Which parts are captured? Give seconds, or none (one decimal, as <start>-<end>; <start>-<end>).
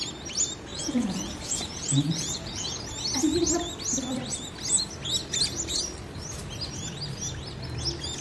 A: 0.0-0.7; 2.8-8.2